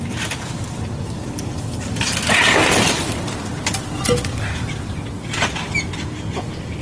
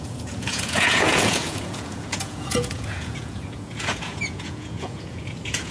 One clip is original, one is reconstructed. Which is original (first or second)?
first